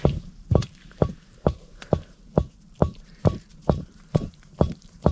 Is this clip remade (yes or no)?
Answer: yes